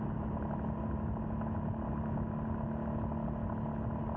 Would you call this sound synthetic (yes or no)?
no